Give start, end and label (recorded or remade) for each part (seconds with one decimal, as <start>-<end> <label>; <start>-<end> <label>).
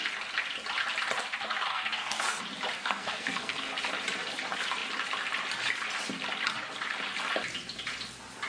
0.0-1.7 recorded; 1.7-2.4 remade; 2.4-2.8 recorded; 2.8-3.7 remade; 3.7-8.5 recorded